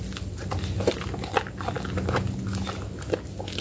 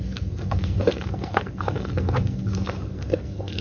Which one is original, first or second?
first